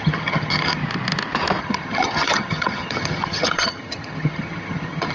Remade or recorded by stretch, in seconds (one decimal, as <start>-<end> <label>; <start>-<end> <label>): 0.0-0.8 remade; 0.8-1.6 recorded; 1.6-5.1 remade